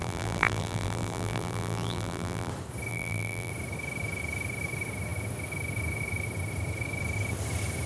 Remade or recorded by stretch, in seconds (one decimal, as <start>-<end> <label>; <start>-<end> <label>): 0.0-2.5 remade; 2.5-2.9 recorded; 2.9-3.5 remade; 3.5-7.9 recorded